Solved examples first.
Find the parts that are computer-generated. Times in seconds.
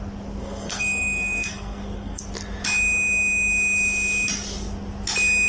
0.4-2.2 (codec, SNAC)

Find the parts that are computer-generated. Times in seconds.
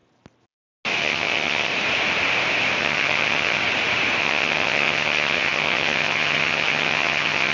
1.0-1.7 (vocoder, HiFi-GAN); 2.8-3.6; 4.2-7.5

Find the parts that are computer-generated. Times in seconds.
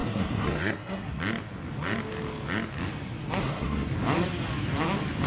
0.0-1.2 (codec, SNAC); 3.4-3.9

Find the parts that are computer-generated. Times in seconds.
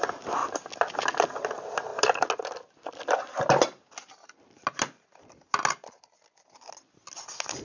none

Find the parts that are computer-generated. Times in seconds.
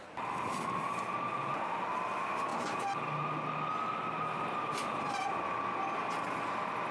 none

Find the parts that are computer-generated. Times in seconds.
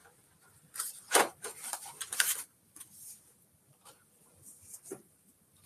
0.8-5.7 (vocoder, BigVGAN v2)